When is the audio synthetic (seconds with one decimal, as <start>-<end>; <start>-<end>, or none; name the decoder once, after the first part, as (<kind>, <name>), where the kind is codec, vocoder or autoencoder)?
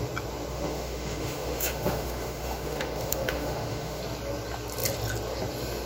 0.5-4.0 (autoencoder, DAC-VAE)